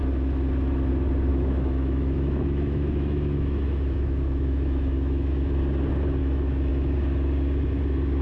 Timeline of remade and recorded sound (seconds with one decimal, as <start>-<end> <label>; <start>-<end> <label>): 0.0-1.3 recorded; 1.3-5.6 remade; 5.6-6.2 recorded; 6.2-6.7 remade; 6.7-8.2 recorded